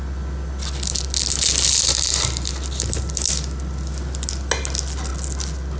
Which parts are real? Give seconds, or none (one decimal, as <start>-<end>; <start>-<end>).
0.0-5.8